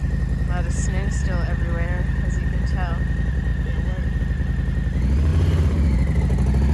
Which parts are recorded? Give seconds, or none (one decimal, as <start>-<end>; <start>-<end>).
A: 0.0-5.3; 6.2-6.7